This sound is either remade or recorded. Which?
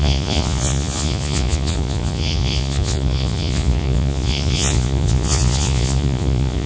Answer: remade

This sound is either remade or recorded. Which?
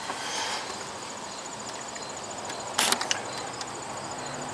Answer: recorded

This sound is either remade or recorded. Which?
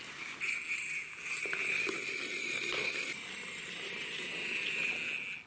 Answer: recorded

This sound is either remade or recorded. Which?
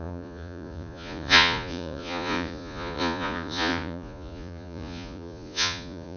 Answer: remade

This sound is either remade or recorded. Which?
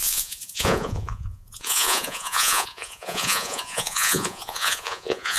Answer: remade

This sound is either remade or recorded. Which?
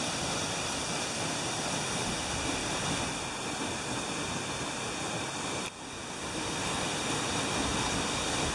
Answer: recorded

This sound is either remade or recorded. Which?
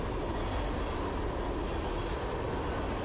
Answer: recorded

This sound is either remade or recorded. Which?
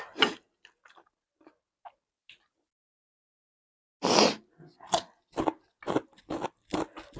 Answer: recorded